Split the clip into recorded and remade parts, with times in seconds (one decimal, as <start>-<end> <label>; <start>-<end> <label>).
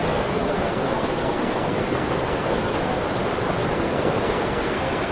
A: 0.0-3.0 remade; 3.0-3.6 recorded; 3.6-5.1 remade